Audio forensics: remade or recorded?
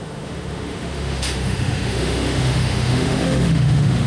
remade